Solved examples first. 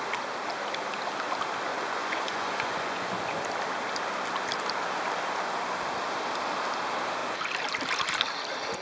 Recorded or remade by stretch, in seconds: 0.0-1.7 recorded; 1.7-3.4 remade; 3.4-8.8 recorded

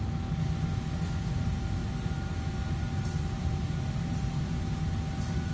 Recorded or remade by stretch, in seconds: 0.0-5.5 recorded

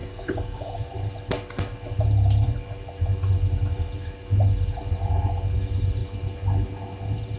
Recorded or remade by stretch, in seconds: 0.0-0.9 remade; 0.9-7.4 recorded

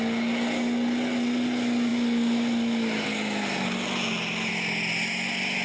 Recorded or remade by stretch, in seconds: 0.0-5.6 recorded